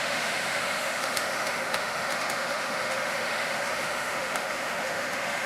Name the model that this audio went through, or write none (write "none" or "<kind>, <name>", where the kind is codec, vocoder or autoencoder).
autoencoder, DAC-VAE